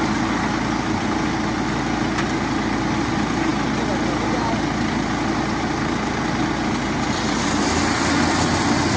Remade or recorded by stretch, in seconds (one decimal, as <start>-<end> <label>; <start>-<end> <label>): 0.0-9.0 recorded